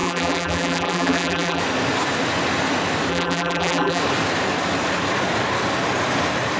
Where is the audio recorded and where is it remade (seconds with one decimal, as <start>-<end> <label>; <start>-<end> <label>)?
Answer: 0.0-1.6 remade; 1.6-3.1 recorded; 3.1-4.0 remade; 4.0-6.6 recorded